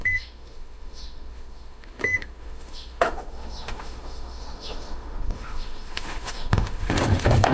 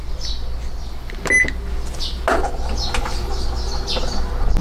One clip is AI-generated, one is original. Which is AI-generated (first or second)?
first